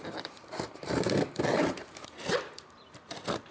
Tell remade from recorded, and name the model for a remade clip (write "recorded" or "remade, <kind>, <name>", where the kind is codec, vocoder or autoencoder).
remade, vocoder, BigVGAN v2